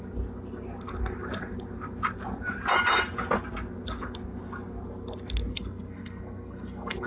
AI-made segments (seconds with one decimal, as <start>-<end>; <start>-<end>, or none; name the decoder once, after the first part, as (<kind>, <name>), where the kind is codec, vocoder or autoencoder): 5.5-7.1 (codec, SNAC)